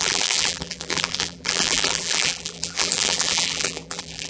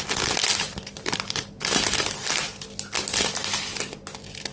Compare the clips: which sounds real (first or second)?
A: second